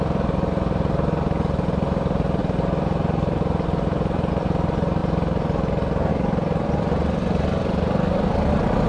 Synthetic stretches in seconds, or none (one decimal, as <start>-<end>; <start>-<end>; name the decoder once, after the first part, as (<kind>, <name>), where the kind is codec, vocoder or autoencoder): none